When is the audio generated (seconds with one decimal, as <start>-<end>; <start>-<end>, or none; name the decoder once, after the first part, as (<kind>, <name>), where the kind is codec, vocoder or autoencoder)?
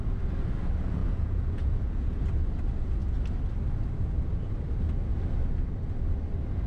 1.0-2.2 (vocoder, Vocos)